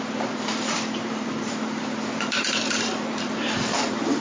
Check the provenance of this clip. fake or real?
fake